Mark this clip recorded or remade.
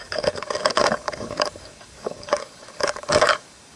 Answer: remade